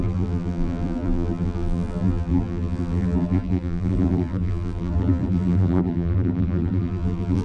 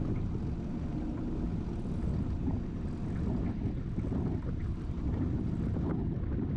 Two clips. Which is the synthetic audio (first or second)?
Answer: first